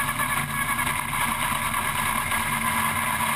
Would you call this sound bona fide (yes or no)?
yes